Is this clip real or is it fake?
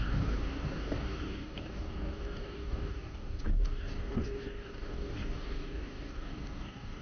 fake